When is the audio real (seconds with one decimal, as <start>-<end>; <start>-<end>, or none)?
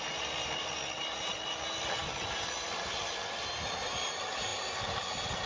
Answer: 0.0-5.5